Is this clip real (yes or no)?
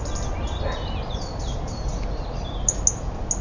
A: yes